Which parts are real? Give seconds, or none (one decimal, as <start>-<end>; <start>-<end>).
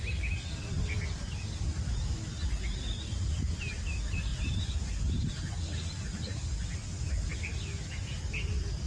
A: 0.0-8.9